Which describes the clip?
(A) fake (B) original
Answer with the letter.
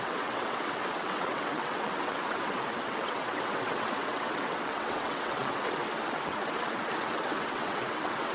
A